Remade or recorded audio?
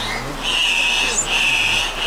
recorded